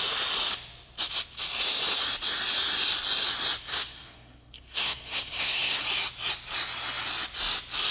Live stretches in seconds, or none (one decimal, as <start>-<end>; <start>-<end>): 0.0-3.7; 5.8-7.9